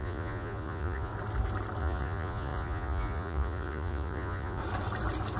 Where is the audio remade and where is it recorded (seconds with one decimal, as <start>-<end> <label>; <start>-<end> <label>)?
0.0-1.1 remade; 1.1-1.8 recorded; 1.8-4.6 remade; 4.6-5.4 recorded